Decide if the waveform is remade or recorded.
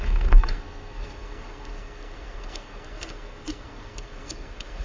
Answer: remade